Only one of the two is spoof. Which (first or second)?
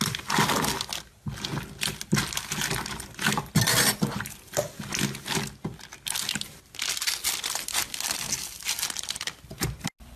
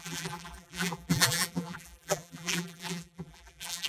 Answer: second